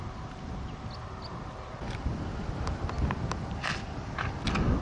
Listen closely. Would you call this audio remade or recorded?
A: recorded